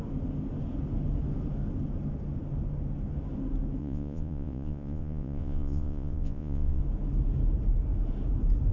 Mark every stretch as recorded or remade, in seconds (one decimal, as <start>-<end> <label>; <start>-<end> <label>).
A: 0.0-3.8 recorded; 3.8-6.8 remade; 6.8-8.7 recorded